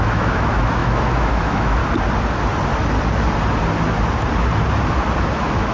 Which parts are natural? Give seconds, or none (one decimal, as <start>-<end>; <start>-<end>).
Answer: 1.8-5.2